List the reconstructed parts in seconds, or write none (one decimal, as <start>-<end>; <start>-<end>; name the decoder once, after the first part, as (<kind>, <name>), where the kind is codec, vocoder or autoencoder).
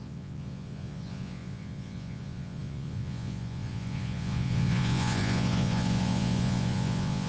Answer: 0.0-7.3 (vocoder, Vocos)